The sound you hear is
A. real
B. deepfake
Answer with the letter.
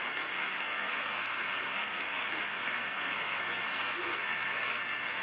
B